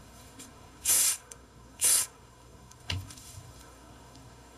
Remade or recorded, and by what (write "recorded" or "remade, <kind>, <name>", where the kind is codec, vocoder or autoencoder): remade, codec, SNAC